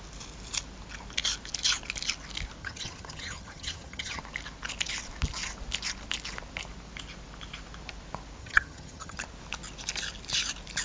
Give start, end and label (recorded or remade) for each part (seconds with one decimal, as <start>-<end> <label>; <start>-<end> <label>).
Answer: 0.0-2.6 recorded; 2.6-4.2 remade; 4.2-8.4 recorded; 8.4-9.2 remade; 9.2-10.8 recorded